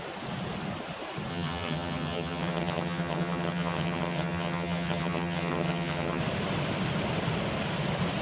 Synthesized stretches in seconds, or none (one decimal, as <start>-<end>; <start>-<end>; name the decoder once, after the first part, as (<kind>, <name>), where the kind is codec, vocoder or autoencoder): 1.3-6.2 (vocoder, HiFi-GAN)